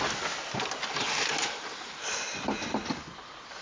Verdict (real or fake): real